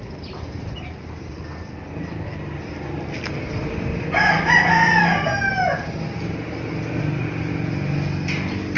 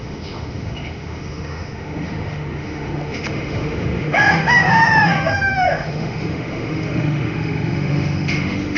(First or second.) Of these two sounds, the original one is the first